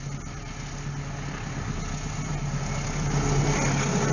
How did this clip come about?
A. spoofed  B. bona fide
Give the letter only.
B